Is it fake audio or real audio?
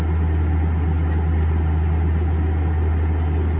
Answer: real